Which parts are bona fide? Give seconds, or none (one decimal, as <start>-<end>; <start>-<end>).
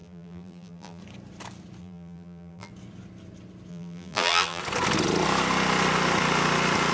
1.0-1.8; 2.7-3.7; 4.6-6.9